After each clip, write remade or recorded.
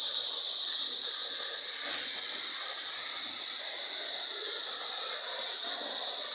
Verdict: recorded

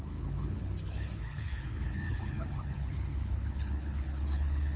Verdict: remade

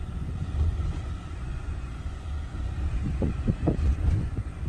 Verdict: remade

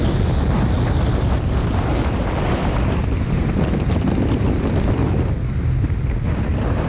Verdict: recorded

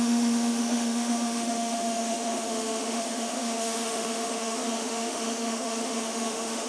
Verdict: remade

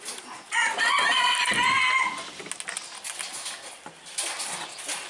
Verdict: recorded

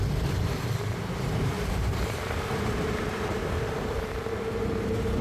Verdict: remade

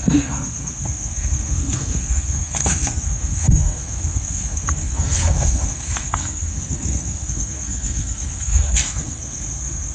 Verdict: remade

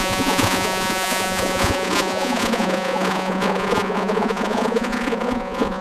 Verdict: remade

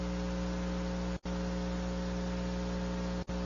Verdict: recorded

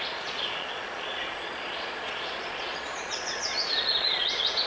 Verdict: remade